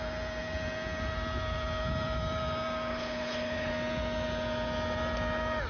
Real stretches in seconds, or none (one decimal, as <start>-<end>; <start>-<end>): 0.0-2.9; 3.7-5.7